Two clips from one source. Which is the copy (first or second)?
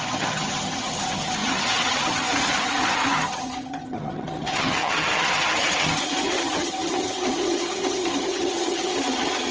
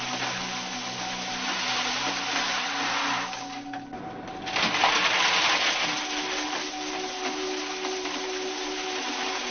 first